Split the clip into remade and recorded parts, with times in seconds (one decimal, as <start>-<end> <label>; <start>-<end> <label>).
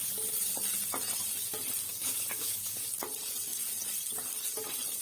0.0-1.9 recorded; 1.9-2.9 remade; 2.9-5.0 recorded